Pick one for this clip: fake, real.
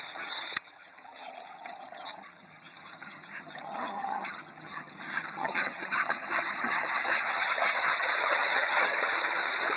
fake